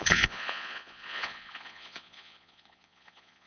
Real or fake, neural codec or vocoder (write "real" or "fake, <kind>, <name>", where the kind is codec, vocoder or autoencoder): fake, vocoder, Vocos